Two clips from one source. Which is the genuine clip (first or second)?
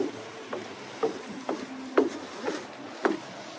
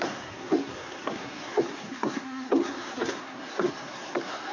first